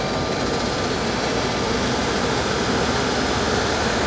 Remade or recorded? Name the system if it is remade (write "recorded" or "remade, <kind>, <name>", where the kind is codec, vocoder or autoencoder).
recorded